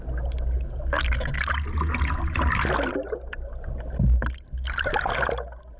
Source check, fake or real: real